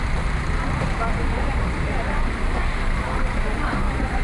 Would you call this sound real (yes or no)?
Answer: yes